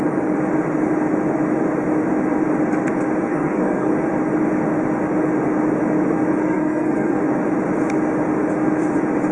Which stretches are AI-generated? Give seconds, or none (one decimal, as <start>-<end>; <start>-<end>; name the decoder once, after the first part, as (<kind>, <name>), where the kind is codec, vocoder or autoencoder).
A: 3.3-3.9 (codec, SNAC); 6.4-7.2